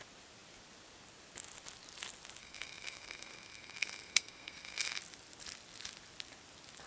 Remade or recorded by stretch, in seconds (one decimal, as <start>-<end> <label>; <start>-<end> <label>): 0.0-2.4 recorded; 2.4-5.0 remade; 5.0-6.9 recorded